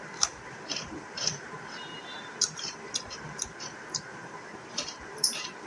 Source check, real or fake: fake